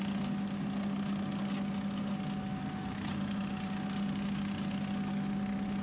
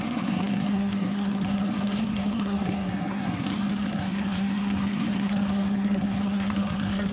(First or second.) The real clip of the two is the first